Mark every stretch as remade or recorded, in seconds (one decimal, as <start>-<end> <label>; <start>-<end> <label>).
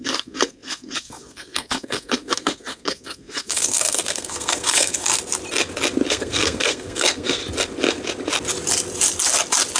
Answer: 0.0-5.1 remade; 5.1-6.1 recorded; 6.1-7.4 remade; 7.4-9.8 recorded